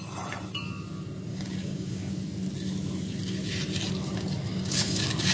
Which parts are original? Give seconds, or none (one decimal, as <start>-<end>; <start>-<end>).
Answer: 0.0-1.3; 2.1-4.5